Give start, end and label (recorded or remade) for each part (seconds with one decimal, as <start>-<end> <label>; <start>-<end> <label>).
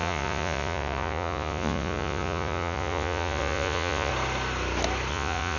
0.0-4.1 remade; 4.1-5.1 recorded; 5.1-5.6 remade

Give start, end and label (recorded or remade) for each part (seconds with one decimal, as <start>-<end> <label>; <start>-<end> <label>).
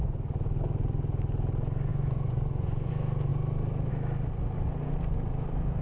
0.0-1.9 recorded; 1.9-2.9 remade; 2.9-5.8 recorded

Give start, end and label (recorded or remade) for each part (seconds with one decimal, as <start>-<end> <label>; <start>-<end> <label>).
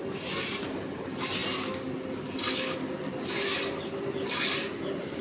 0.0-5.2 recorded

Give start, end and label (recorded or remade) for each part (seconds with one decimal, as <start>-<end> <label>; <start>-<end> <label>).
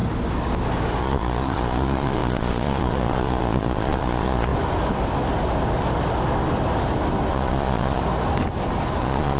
0.0-1.0 recorded; 1.0-4.5 remade; 4.5-7.3 recorded; 7.3-8.0 remade; 8.0-9.0 recorded; 9.0-9.4 remade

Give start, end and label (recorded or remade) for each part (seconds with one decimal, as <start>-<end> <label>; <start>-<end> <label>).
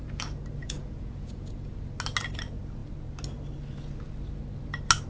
0.0-0.6 recorded; 0.6-1.7 remade; 1.7-5.1 recorded